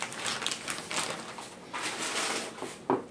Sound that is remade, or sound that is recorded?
recorded